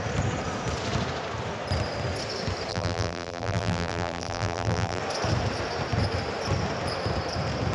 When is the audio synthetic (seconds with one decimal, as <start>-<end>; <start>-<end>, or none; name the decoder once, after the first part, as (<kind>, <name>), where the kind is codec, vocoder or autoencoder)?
2.7-5.0 (vocoder, BigVGAN v2)